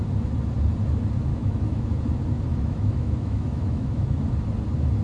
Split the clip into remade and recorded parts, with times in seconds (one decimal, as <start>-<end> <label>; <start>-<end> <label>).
0.0-1.3 recorded; 1.3-1.9 remade; 1.9-2.5 recorded; 2.5-4.2 remade; 4.2-5.0 recorded